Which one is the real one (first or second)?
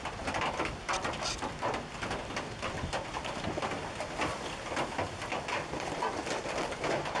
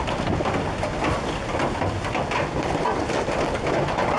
second